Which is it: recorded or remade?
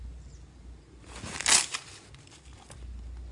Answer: recorded